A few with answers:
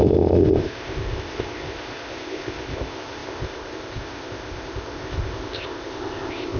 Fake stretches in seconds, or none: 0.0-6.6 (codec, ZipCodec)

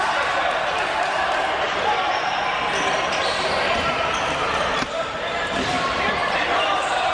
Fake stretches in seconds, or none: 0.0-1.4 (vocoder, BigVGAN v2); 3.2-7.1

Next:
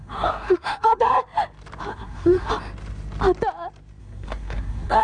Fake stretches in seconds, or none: 0.0-1.2 (codec, SNAC); 1.9-2.5; 4.0-5.0

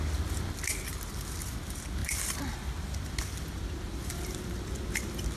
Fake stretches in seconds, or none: none

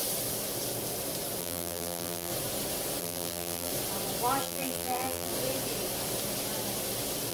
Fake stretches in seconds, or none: 1.4-2.3 (vocoder, BigVGAN v2); 3.0-3.7; 4.4-5.3

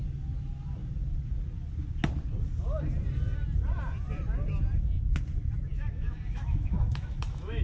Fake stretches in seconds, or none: 5.7-7.6 (autoencoder, DAC-VAE)